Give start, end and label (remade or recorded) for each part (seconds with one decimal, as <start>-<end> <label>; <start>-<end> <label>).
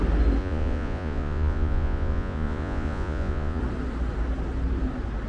0.0-0.4 recorded; 0.4-3.6 remade; 3.6-5.3 recorded